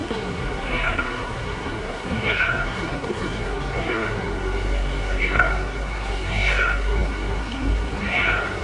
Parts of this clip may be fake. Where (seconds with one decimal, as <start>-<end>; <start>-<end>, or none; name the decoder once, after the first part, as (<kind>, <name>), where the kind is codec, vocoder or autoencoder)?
0.0-8.6 (codec, SNAC)